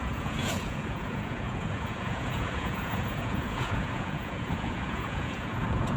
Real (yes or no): no